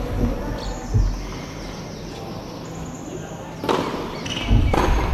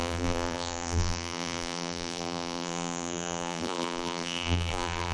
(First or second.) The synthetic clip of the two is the second